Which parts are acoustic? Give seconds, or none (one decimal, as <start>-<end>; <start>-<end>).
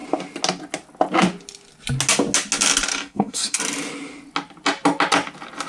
0.0-2.9; 3.6-5.7